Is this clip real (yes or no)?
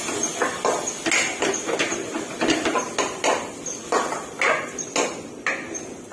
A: yes